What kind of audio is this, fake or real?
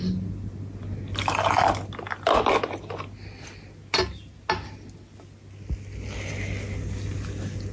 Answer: real